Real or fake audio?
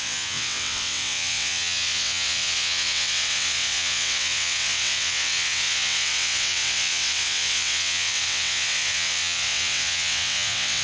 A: fake